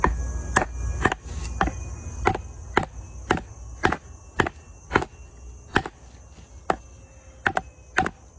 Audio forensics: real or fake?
real